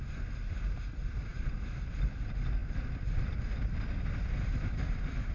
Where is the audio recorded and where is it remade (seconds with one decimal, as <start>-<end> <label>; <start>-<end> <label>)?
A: 0.0-5.3 recorded